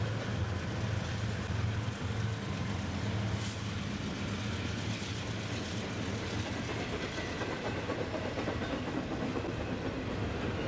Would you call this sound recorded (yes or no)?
yes